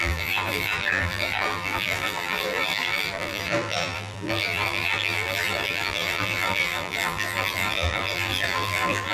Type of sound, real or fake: fake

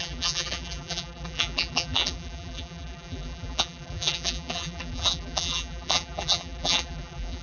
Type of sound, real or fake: fake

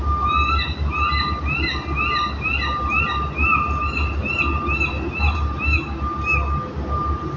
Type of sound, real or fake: real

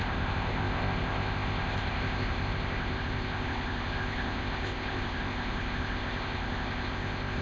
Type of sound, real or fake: fake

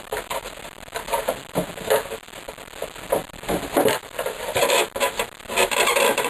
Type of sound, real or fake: real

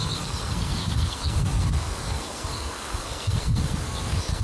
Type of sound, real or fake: fake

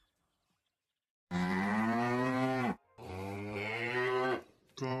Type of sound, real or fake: fake